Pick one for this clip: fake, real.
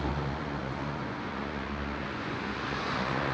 fake